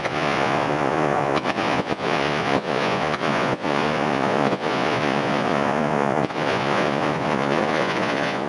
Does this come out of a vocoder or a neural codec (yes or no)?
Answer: yes